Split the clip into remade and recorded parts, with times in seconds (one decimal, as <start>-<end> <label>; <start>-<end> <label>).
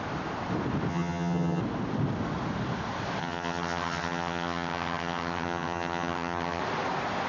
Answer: 0.0-0.9 recorded; 0.9-1.6 remade; 1.6-3.2 recorded; 3.2-6.6 remade; 6.6-7.3 recorded